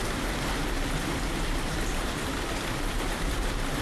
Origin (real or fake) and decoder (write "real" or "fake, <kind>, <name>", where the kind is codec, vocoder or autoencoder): fake, vocoder, BigVGAN v2